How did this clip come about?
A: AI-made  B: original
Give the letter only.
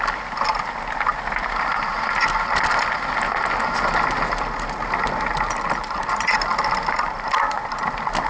B